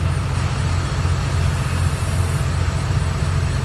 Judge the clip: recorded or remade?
recorded